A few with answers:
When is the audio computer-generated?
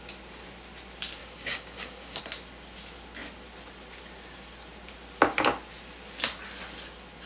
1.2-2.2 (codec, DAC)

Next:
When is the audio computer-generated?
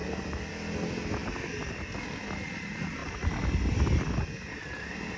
none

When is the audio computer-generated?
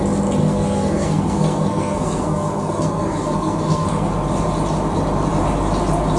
0.4-4.1 (codec, SNAC)